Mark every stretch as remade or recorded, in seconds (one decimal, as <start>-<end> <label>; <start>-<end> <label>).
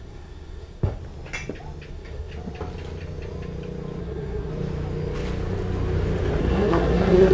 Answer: 0.0-1.0 remade; 1.0-1.9 recorded; 1.9-2.3 remade; 2.3-4.0 recorded; 4.0-4.5 remade; 4.5-6.4 recorded; 6.4-7.3 remade